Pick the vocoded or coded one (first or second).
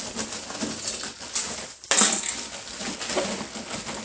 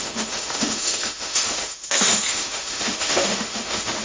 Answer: second